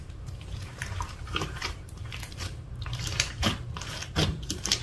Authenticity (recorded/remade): remade